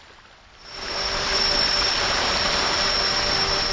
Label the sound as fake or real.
real